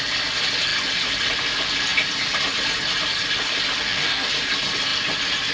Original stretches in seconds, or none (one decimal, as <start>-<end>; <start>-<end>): 0.0-3.8; 4.3-5.5